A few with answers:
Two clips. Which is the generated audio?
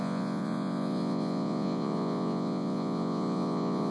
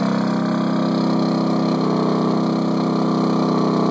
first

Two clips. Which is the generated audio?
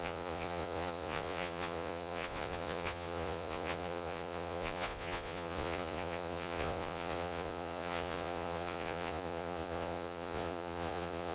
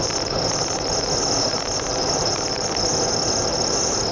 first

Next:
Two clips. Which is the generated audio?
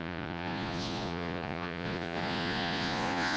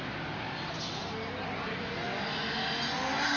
first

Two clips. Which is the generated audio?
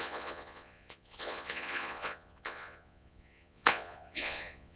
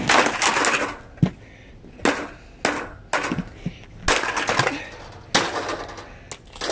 first